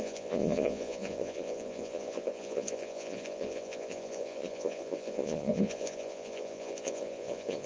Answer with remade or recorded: remade